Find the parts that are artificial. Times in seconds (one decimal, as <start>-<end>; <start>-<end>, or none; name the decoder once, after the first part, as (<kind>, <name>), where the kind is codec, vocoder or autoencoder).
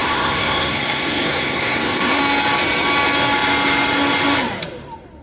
0.0-2.2 (codec, SNAC)